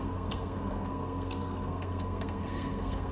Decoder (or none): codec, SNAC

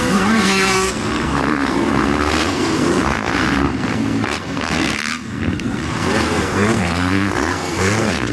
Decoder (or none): codec, SNAC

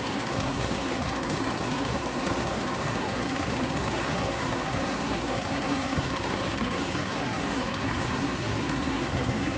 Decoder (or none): codec, SNAC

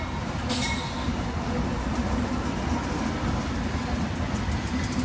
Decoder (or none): none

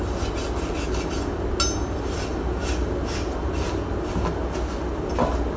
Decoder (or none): none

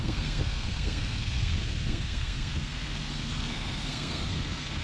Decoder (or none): codec, SNAC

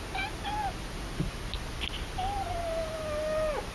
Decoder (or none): none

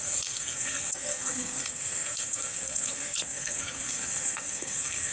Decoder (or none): codec, SNAC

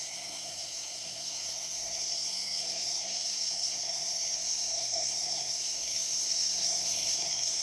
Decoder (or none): codec, SNAC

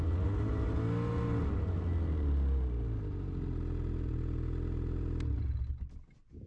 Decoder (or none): none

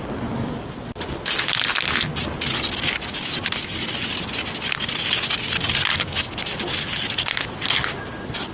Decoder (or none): none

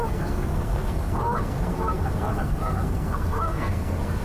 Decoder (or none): codec, SNAC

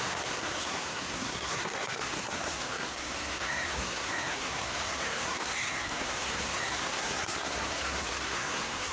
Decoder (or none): codec, SNAC